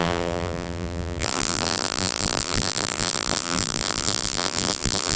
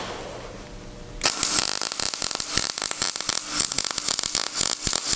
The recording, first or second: second